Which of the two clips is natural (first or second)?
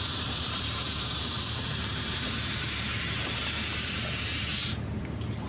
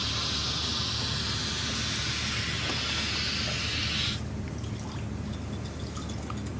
second